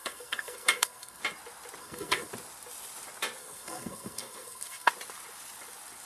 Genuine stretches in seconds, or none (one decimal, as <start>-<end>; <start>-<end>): 1.2-1.8; 2.3-3.4; 4.9-6.1